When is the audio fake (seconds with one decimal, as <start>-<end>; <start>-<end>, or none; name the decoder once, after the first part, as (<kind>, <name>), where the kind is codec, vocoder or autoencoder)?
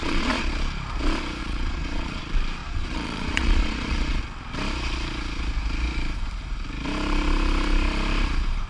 0.0-0.5 (vocoder, Vocos); 1.4-2.2; 2.6-4.2